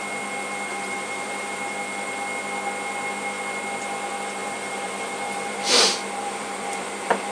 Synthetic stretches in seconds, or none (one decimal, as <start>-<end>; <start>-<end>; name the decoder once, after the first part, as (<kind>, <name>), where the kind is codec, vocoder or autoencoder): 0.7-1.6 (vocoder, BigVGAN v2); 4.4-7.3